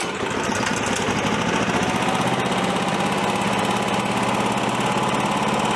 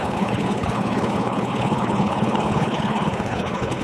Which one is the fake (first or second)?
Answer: second